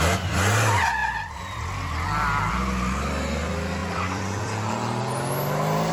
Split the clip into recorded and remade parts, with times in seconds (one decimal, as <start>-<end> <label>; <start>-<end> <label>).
0.0-3.8 recorded; 3.8-4.7 remade; 4.7-5.9 recorded